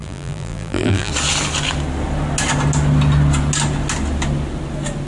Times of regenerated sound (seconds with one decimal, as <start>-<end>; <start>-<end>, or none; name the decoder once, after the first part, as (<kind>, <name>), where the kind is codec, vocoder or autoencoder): 0.0-1.1 (vocoder, BigVGAN v2)